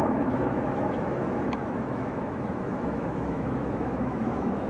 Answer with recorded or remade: remade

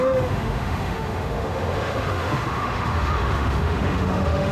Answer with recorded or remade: remade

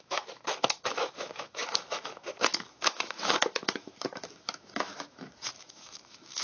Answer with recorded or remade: remade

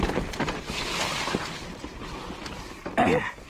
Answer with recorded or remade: recorded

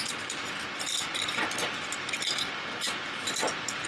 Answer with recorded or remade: recorded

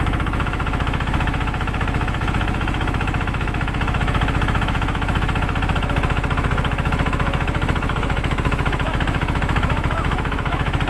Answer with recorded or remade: remade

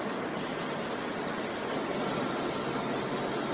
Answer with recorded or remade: recorded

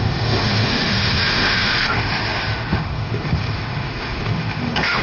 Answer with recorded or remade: remade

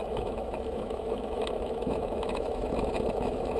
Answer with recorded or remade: remade